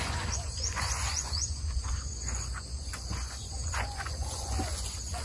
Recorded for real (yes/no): no